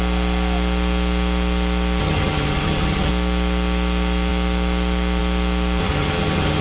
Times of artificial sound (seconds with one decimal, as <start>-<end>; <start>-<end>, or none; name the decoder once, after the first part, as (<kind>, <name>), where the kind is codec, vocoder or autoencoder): 2.0-3.1 (vocoder, HiFi-GAN); 5.8-6.6